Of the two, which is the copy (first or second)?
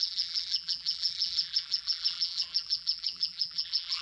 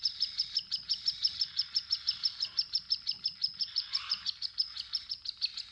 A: first